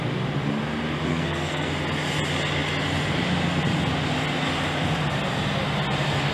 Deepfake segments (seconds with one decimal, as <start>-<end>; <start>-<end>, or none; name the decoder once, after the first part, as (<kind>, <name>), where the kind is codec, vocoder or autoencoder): 1.1-1.7 (codec, SNAC)